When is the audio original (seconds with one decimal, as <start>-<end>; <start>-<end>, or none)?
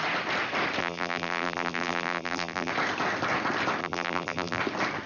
0.0-0.8; 2.7-3.8; 4.6-5.1